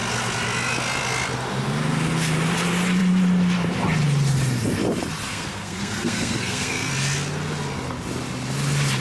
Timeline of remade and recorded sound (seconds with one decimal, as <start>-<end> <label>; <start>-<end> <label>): 0.0-5.3 recorded; 5.3-6.9 remade; 6.9-9.0 recorded